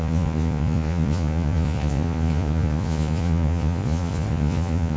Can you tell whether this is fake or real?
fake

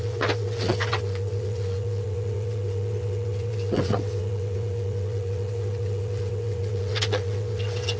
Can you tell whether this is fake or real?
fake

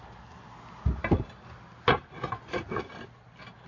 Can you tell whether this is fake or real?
real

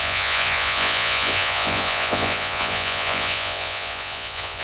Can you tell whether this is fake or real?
fake